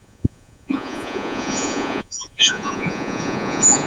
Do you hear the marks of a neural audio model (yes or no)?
yes